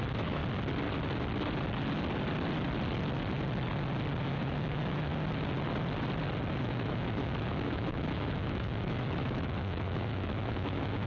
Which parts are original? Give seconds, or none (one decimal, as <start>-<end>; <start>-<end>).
0.4-4.2; 5.1-6.6